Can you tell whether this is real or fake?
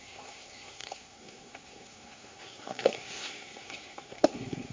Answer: fake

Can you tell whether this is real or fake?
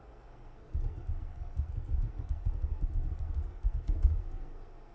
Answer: fake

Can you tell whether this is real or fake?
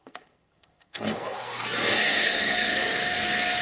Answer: fake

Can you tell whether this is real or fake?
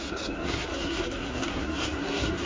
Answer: fake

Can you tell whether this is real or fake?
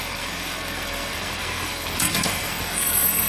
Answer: fake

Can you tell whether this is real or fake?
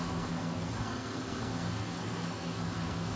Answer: fake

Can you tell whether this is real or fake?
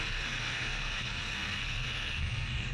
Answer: fake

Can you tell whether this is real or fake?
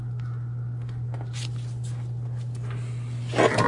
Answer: real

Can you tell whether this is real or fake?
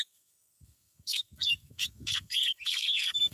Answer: fake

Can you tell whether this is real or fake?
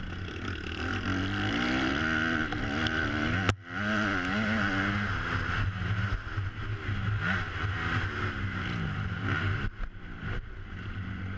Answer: real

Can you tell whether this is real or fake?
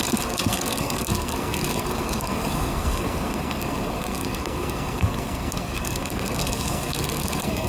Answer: fake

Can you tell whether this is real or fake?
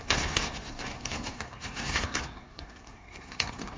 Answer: fake